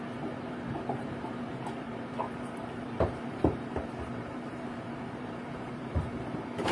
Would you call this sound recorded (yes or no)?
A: no